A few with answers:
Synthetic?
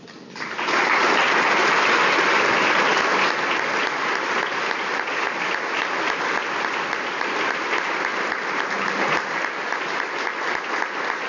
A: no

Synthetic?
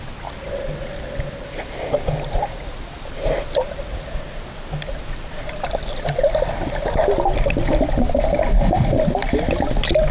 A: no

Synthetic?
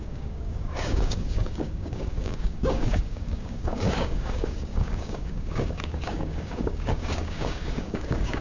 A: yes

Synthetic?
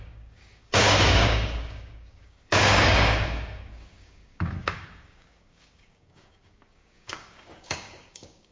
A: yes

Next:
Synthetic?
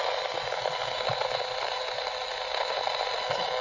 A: no